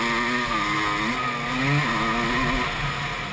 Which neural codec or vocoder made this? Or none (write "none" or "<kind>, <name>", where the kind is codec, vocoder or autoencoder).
none